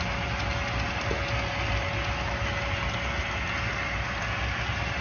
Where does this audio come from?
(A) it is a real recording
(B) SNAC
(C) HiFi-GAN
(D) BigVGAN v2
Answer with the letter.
A